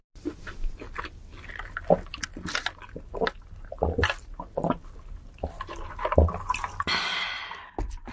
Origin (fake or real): real